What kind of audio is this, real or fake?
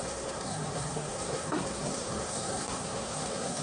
fake